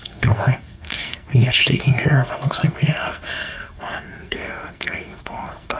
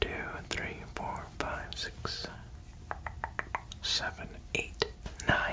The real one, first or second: second